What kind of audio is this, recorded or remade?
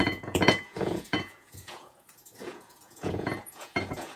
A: remade